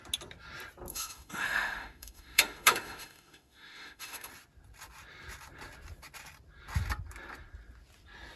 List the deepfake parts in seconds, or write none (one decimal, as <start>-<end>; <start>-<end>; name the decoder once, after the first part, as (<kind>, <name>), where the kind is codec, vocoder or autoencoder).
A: 0.9-4.3 (autoencoder, DAC-VAE)